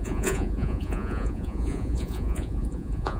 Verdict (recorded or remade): remade